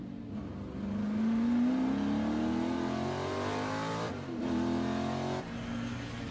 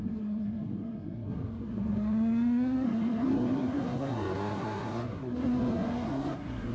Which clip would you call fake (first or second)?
second